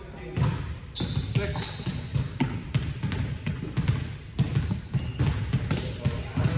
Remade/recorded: recorded